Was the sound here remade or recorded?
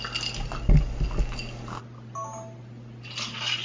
recorded